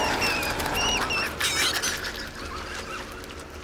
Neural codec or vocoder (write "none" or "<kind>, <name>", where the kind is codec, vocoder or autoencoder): none